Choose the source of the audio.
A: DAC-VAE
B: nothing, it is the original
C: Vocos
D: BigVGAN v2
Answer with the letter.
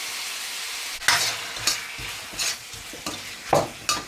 B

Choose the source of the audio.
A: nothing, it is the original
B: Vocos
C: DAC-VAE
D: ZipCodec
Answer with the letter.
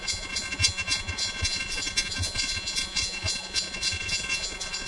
B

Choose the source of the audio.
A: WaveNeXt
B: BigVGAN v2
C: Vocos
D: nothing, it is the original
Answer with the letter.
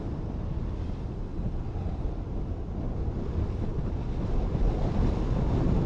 D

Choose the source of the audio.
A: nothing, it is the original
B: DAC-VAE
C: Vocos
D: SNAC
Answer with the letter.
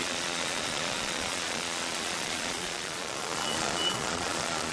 C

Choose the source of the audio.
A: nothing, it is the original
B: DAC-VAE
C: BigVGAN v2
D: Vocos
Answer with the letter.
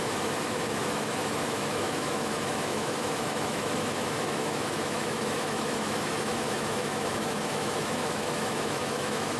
B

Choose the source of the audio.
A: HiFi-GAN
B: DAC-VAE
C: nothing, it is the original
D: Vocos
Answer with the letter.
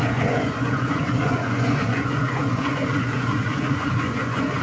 D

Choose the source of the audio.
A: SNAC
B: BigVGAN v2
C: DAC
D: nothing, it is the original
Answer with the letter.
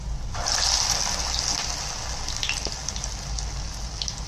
D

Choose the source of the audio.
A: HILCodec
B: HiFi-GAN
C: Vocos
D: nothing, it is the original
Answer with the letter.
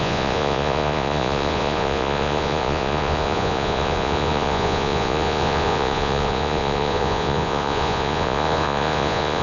C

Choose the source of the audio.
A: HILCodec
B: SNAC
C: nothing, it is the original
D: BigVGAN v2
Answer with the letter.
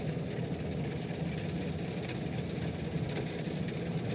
C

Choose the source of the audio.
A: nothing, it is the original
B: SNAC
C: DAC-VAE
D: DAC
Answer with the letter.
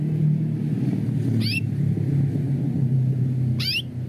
A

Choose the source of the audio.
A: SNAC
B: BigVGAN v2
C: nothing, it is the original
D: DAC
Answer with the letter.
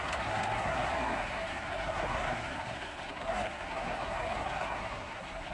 A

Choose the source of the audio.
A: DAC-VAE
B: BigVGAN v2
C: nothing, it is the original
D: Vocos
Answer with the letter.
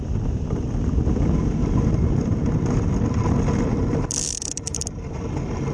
C